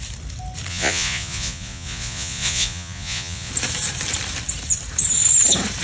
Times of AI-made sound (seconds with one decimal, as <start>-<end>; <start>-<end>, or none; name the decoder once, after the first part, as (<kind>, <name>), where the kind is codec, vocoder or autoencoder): 0.7-3.5 (vocoder, Vocos)